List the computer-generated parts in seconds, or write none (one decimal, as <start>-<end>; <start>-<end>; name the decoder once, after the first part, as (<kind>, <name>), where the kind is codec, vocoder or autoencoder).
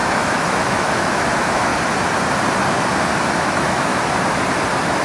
0.0-1.7 (autoencoder, DAC-VAE); 3.4-3.9